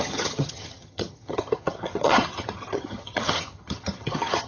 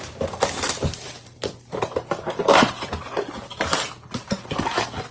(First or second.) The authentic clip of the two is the second